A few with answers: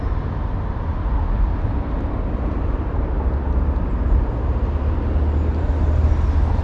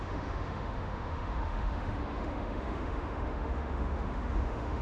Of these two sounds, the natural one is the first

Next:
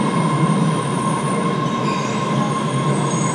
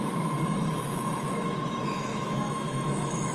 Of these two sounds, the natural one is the first